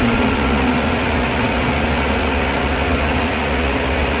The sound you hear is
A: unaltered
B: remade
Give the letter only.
B